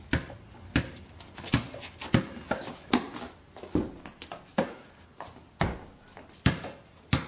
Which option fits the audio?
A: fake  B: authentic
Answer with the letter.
B